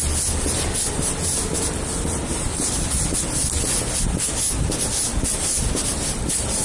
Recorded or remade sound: recorded